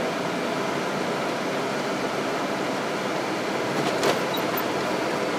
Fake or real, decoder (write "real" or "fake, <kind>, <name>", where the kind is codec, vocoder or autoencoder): real